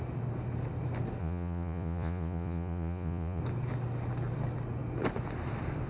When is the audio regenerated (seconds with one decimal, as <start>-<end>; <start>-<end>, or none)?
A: 1.2-3.4